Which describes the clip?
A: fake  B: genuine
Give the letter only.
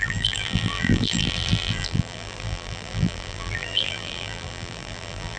A